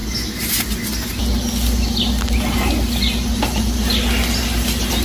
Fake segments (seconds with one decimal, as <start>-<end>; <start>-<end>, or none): none